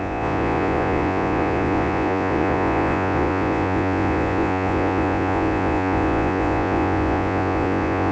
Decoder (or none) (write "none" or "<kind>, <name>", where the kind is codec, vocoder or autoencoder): vocoder, Vocos